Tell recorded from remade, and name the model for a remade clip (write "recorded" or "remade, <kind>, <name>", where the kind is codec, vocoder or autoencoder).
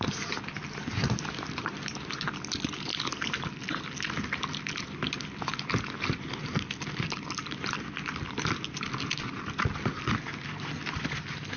recorded